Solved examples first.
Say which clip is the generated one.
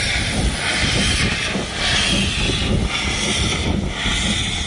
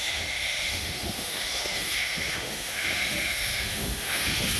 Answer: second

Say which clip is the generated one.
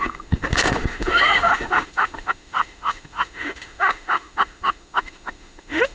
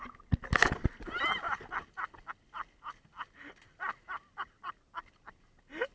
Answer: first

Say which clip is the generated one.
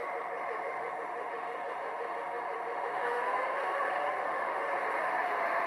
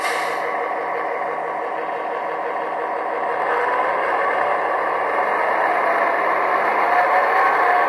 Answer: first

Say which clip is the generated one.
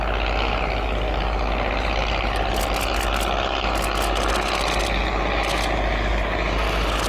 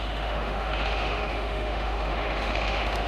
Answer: second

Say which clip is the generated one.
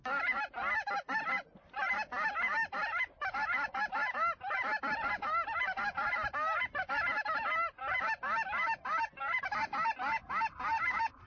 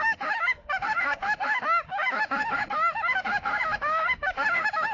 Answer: second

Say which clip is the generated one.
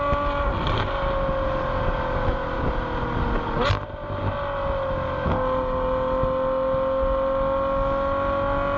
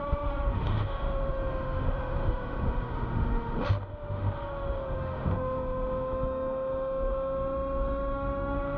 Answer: second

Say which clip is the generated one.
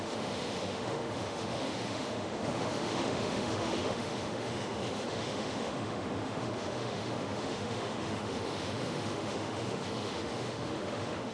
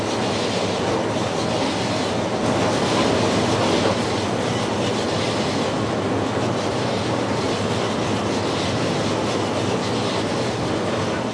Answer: first